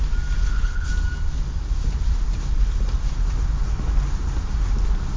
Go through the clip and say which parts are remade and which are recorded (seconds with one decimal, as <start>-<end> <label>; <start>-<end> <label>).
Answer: 0.0-0.4 recorded; 0.4-0.9 remade; 0.9-5.2 recorded